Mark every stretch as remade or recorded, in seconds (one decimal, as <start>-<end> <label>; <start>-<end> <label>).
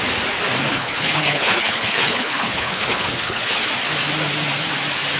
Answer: 0.0-0.7 recorded; 0.7-3.6 remade; 3.6-5.2 recorded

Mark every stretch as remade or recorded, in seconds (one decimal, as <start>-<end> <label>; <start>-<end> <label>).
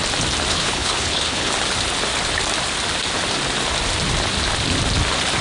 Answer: 0.0-0.5 recorded; 0.5-1.5 remade; 1.5-5.4 recorded